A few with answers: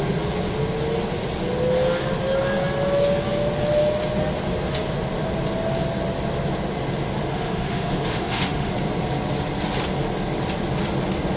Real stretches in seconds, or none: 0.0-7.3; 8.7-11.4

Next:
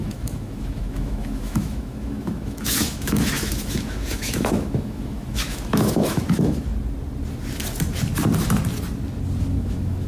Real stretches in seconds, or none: 6.7-9.5

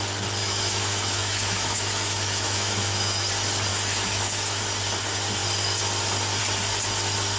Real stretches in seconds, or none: 0.0-0.4; 3.3-3.7; 4.6-7.4

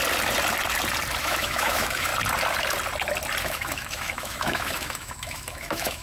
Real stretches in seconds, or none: 0.0-1.2; 2.1-3.4

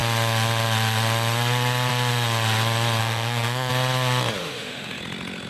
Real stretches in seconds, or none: 0.0-3.0; 3.7-4.4; 5.0-5.5